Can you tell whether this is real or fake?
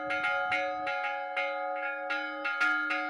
real